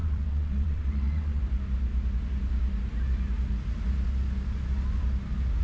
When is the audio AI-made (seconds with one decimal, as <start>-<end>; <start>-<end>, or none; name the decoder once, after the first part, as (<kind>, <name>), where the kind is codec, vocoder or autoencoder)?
0.0-1.4 (vocoder, WaveNeXt)